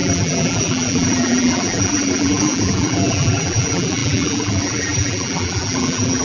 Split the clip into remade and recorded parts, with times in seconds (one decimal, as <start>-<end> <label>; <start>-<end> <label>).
0.0-6.2 remade